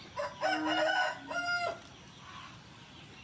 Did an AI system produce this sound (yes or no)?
no